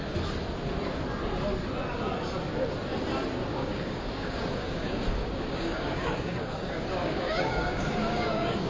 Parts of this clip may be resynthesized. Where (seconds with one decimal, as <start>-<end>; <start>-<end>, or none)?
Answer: 3.5-8.7